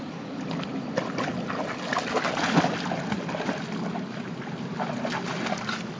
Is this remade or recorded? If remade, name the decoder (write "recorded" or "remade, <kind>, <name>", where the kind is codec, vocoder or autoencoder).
recorded